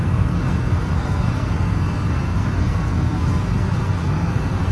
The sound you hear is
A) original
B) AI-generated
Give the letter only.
B